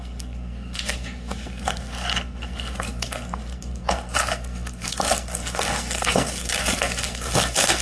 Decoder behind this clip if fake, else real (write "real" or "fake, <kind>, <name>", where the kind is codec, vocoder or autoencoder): fake, codec, SNAC